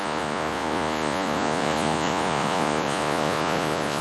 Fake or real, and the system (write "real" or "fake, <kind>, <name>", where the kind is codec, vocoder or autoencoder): fake, vocoder, Vocos